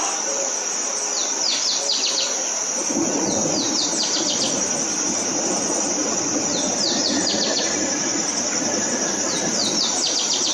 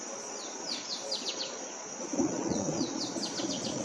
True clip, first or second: first